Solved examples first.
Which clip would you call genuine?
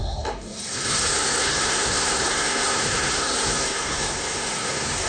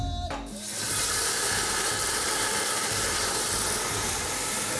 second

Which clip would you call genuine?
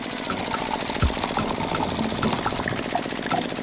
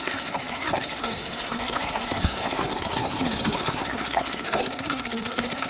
first